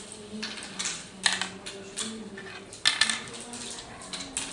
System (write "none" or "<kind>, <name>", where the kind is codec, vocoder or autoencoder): none